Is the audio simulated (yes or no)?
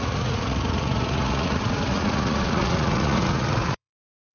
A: yes